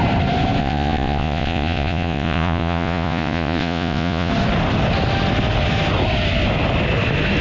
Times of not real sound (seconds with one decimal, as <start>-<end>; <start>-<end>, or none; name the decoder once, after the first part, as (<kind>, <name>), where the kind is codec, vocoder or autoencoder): 0.6-4.3 (vocoder, Vocos)